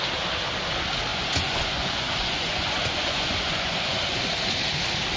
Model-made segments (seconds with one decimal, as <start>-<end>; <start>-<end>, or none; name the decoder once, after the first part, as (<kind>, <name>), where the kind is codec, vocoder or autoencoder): 1.1-4.2 (vocoder, Vocos)